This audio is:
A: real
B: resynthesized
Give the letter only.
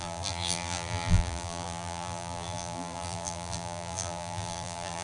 B